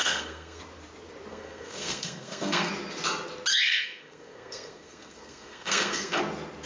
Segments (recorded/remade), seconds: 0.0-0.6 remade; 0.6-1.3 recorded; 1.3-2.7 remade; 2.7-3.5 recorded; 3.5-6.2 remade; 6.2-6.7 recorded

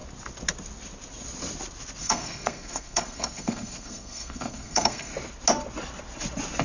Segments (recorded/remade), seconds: 0.0-2.0 recorded; 2.0-5.1 remade; 5.1-6.6 recorded